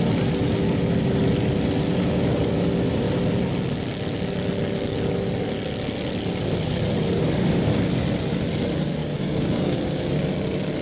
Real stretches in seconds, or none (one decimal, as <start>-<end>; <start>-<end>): 0.0-9.0; 10.2-10.8